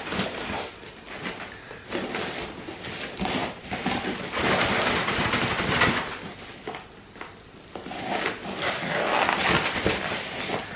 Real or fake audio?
real